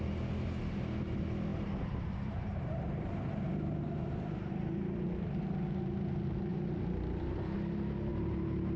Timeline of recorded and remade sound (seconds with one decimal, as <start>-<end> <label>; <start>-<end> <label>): 0.0-1.5 recorded; 1.5-4.5 remade; 4.5-8.8 recorded